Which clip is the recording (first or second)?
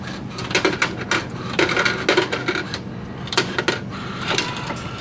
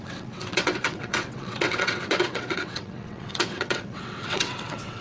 first